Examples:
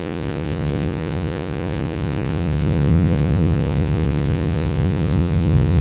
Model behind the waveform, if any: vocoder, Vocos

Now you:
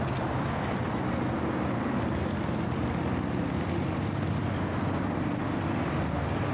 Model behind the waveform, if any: none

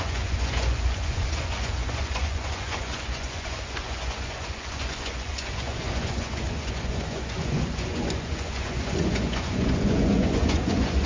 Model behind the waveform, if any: vocoder, Vocos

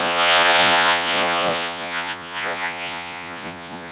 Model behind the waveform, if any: vocoder, Vocos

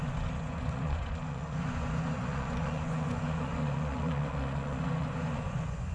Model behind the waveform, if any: vocoder, Vocos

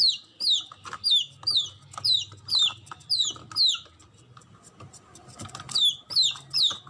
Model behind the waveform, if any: none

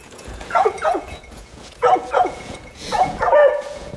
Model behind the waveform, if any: vocoder, Vocos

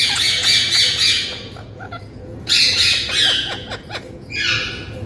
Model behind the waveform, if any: vocoder, Vocos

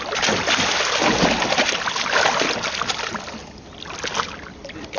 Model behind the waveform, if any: none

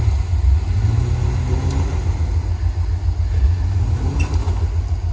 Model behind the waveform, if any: none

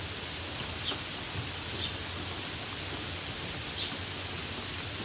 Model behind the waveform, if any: none